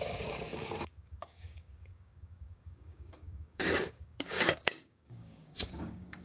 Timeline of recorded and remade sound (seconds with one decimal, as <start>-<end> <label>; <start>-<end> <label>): 0.0-6.2 remade